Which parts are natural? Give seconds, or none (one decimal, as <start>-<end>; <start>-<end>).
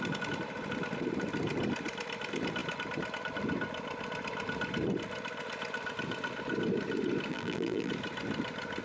0.0-7.3; 7.9-8.8